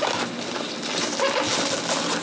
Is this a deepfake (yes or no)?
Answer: no